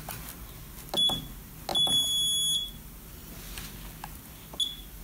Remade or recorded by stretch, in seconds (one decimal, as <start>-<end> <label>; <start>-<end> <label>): 0.0-5.0 recorded